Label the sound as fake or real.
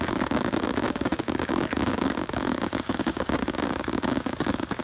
fake